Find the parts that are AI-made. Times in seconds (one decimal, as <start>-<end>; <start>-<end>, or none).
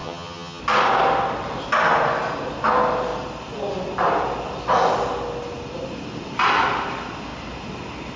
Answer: 0.0-0.6